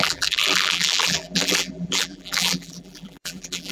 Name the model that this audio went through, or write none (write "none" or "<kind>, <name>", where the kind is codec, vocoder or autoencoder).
vocoder, BigVGAN v2